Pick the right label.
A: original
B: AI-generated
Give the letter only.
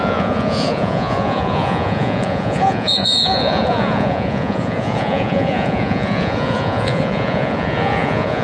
B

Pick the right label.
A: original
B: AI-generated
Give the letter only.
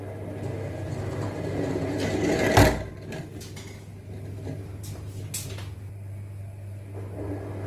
A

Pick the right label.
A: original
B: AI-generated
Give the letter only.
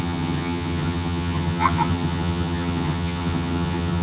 B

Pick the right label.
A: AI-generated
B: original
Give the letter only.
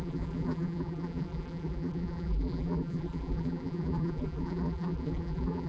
A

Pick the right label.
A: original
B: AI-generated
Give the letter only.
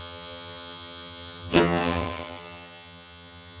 B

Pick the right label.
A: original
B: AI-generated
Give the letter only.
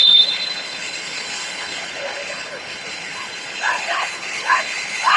B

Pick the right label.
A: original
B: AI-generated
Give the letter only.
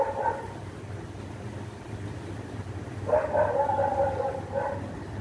B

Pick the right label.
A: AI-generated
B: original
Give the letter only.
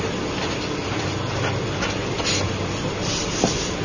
B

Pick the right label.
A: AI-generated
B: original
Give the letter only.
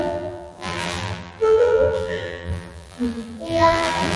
A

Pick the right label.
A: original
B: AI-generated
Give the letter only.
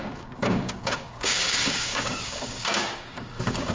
B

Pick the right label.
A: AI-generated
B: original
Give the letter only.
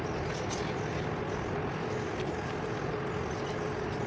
B